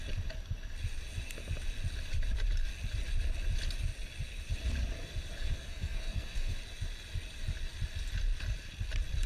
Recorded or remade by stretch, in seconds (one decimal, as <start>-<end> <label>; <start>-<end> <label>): 0.0-5.4 recorded; 5.4-6.6 remade; 6.6-9.3 recorded